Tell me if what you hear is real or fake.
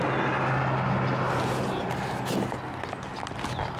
real